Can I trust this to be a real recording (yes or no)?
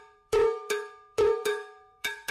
no